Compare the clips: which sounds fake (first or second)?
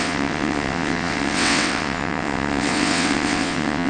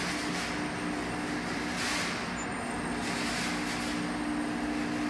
first